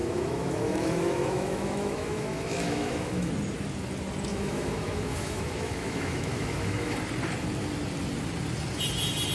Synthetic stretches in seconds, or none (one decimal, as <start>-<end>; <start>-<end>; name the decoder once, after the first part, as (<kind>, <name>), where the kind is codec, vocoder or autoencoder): 0.0-3.3 (autoencoder, DAC-VAE); 4.3-7.0